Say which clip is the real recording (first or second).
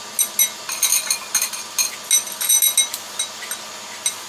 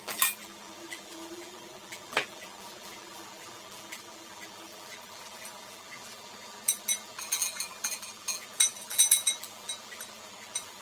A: first